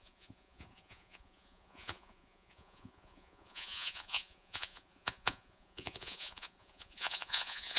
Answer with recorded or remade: remade